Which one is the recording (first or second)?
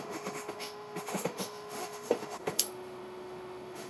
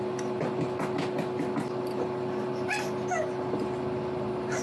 second